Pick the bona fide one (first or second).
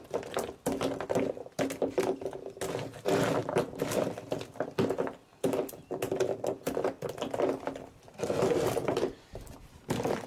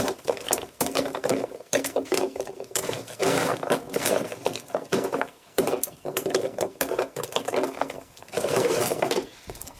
first